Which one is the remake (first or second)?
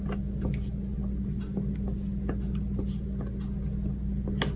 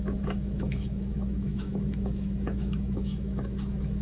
second